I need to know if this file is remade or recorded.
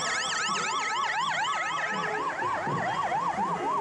remade